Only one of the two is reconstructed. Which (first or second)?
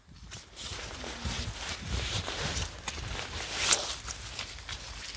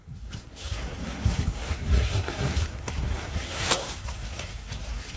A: second